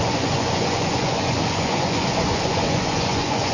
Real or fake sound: fake